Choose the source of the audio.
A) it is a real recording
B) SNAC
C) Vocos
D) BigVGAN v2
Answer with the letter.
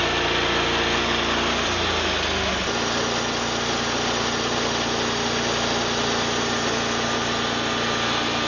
A